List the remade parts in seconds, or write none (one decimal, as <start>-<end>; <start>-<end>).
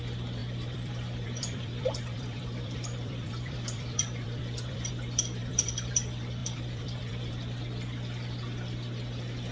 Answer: 0.4-4.9; 5.4-5.9; 6.4-7.3